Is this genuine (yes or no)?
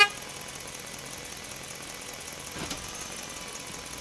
yes